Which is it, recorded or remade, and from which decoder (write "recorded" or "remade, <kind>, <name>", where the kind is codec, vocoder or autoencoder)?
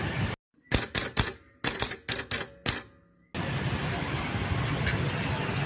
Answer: recorded